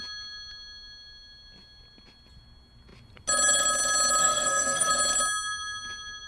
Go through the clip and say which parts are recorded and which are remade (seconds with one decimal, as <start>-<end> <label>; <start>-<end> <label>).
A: 0.0-4.2 recorded; 4.2-4.9 remade; 4.9-6.3 recorded